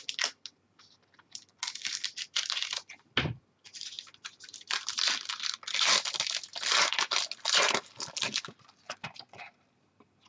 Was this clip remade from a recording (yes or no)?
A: no